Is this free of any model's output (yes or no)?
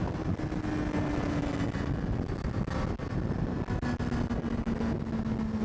yes